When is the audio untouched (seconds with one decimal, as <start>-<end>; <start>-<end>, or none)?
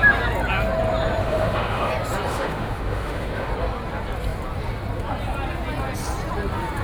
0.0-1.2; 1.9-2.3; 3.5-6.8